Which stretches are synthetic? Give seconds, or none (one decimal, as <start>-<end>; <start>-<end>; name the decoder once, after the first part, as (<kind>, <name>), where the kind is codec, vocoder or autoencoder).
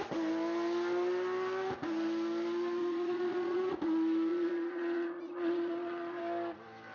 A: 2.8-3.7 (vocoder, Vocos); 4.3-6.2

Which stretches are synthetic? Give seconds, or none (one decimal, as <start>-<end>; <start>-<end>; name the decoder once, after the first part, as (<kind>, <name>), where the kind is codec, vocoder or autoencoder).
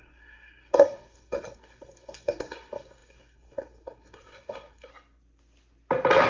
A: 0.0-4.9 (codec, SNAC)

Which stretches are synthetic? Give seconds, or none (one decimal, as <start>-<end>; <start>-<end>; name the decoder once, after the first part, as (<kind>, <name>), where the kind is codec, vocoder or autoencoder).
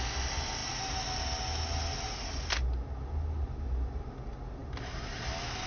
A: none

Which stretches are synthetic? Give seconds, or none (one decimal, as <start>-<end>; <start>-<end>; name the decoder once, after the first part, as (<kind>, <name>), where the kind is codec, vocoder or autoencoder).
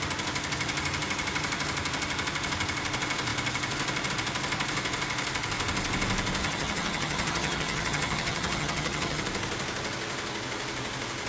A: 6.4-9.2 (vocoder, HiFi-GAN)